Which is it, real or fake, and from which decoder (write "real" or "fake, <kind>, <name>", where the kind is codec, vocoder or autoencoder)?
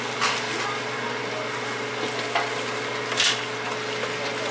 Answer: real